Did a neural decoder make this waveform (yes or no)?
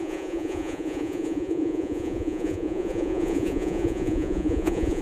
yes